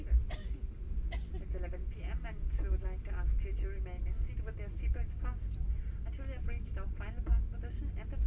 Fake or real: real